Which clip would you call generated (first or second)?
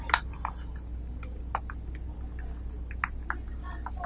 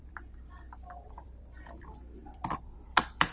second